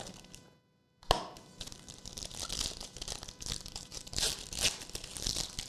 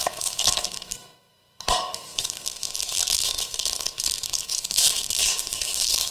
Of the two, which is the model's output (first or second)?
second